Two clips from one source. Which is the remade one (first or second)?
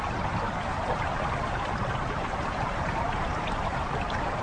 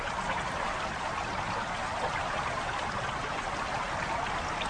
first